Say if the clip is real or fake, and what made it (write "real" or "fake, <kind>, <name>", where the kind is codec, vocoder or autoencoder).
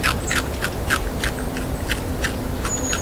real